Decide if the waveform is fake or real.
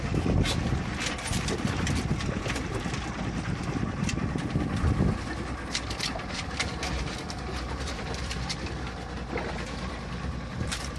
real